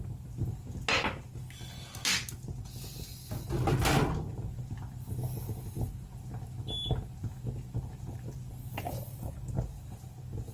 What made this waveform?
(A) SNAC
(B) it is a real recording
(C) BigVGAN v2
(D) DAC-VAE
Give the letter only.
B